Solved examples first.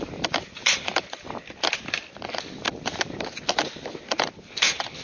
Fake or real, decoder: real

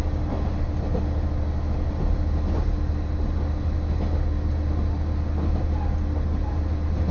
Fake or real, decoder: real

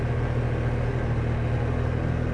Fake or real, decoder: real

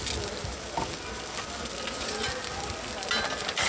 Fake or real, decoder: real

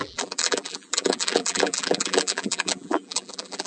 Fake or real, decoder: fake, vocoder, BigVGAN v2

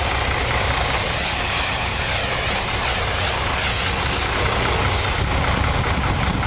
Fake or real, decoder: real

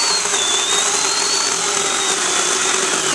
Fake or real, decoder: real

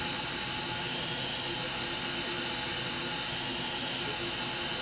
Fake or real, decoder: real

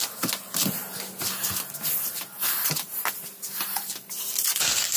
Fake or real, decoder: real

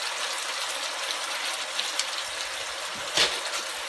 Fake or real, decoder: real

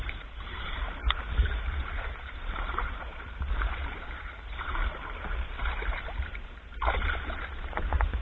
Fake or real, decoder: fake, vocoder, BigVGAN v2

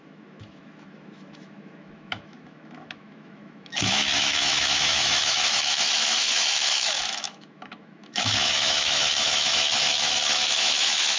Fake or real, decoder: fake, autoencoder, DAC-VAE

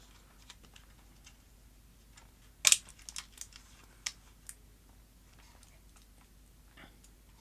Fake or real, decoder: real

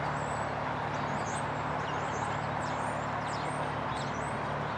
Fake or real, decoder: real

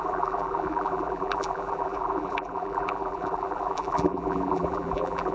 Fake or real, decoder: fake, vocoder, BigVGAN v2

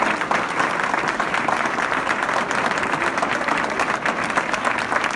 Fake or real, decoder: real